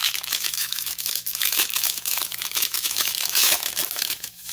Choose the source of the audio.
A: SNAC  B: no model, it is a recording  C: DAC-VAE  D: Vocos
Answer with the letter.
C